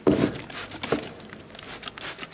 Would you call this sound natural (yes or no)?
yes